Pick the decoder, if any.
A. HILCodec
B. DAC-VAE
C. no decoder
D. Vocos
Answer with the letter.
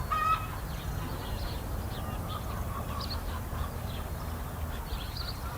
C